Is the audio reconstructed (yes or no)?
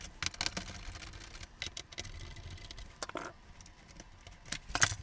no